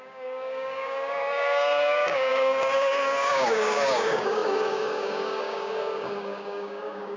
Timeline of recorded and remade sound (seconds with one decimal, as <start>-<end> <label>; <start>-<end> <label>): 0.0-7.2 remade